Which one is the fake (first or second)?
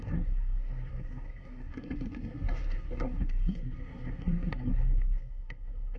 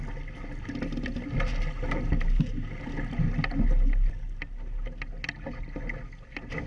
first